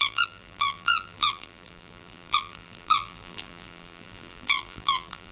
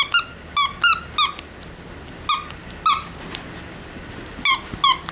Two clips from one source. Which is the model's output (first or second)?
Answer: first